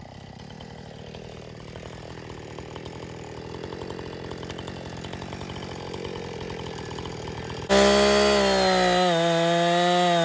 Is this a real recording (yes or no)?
yes